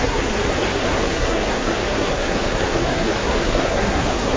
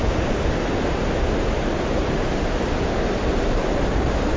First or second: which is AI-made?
first